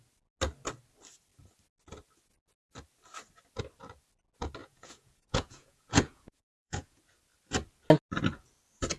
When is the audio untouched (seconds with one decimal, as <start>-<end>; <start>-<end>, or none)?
0.0-4.6; 7.0-9.0